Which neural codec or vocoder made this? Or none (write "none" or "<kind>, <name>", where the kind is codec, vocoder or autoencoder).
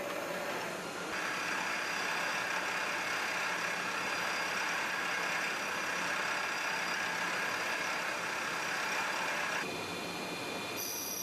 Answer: none